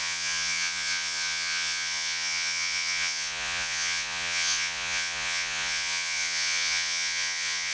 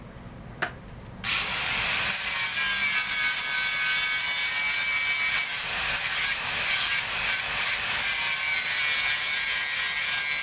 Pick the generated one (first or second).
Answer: first